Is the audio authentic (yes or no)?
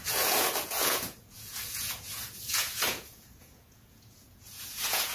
no